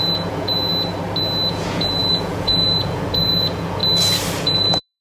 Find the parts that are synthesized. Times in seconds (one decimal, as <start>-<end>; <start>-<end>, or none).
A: 0.0-0.7; 1.5-3.8; 4.4-5.0